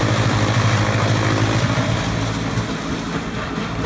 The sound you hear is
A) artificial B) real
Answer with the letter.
B